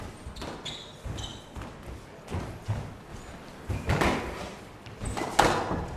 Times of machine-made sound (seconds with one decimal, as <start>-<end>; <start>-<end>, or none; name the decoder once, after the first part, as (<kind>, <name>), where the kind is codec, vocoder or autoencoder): none

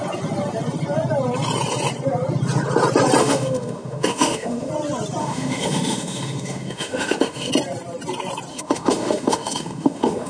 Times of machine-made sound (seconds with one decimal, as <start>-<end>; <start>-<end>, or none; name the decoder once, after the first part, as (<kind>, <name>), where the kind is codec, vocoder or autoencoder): 3.2-4.7 (autoencoder, DAC-VAE); 5.2-7.5; 8.5-10.3